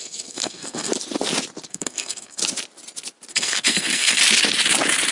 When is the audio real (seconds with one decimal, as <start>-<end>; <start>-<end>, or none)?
0.9-1.7; 2.4-3.3; 4.2-5.1